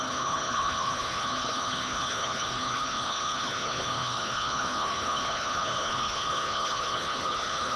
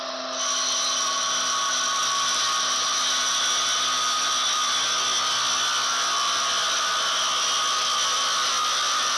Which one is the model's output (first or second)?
first